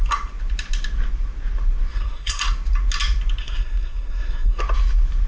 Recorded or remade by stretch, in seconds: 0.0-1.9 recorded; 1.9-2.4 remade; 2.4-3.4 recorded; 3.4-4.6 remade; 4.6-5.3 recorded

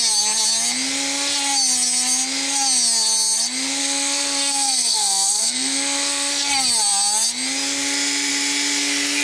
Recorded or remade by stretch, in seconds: 0.0-3.8 recorded; 3.8-6.3 remade; 6.3-9.2 recorded

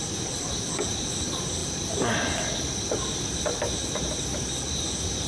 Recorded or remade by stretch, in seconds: 0.0-5.3 recorded